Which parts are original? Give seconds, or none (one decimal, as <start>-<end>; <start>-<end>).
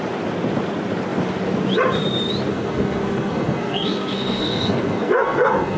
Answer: 0.0-2.5